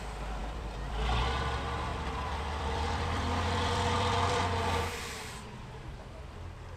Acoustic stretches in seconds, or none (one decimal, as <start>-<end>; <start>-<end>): 0.0-0.4; 1.2-1.9; 6.0-6.8